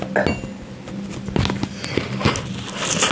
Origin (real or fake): real